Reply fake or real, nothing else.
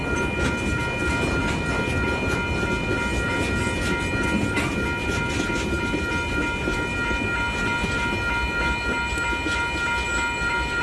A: real